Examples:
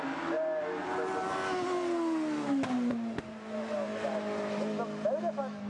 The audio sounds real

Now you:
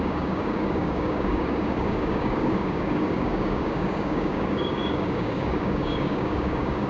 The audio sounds fake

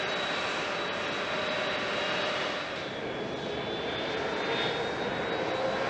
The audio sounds real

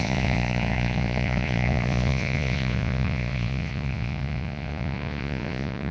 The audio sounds fake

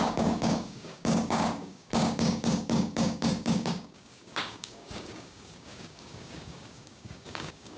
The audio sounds fake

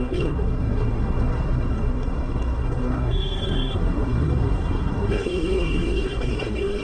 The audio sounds fake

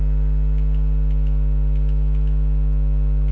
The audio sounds real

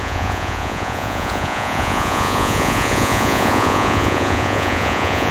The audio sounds fake